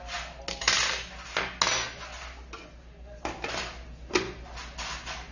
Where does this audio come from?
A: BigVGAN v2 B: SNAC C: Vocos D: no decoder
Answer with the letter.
D